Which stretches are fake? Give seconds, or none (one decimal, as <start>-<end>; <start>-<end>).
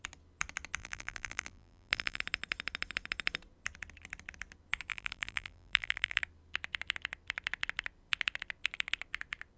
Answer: 0.8-2.2; 4.9-6.2